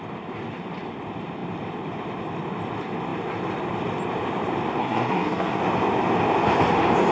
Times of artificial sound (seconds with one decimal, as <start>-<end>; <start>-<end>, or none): 4.8-5.6